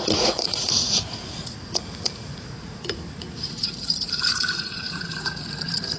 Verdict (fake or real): fake